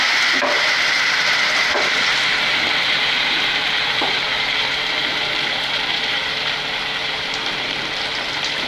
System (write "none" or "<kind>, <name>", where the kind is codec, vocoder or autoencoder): vocoder, BigVGAN v2